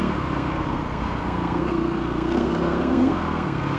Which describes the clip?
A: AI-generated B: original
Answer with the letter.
A